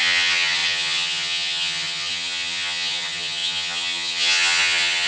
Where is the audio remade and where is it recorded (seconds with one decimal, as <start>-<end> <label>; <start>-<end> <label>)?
0.0-5.1 remade